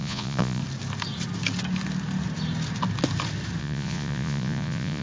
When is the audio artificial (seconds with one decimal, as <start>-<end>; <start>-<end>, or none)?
0.0-0.6; 3.6-5.0